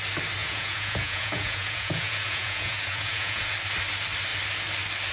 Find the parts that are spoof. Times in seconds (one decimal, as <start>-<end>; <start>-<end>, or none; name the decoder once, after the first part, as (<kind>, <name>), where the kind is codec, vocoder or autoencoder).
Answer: 0.4-3.5 (vocoder, Vocos)